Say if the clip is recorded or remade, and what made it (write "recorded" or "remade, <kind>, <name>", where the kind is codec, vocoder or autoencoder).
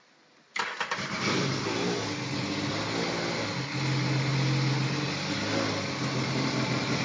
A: recorded